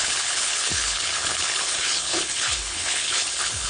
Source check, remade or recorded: remade